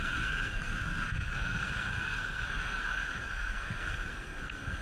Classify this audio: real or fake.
fake